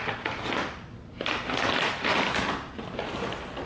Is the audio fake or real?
real